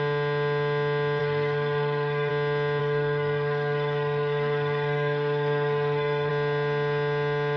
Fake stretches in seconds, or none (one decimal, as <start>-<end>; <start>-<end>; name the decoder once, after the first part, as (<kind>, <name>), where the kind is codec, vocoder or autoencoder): 1.2-2.3 (codec, SNAC); 2.8-6.3